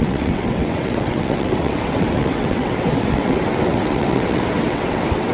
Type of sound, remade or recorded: remade